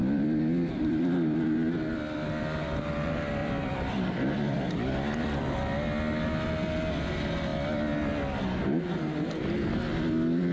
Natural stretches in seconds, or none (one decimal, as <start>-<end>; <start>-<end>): 1.4-3.4; 4.6-10.5